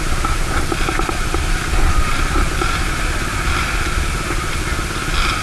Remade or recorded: recorded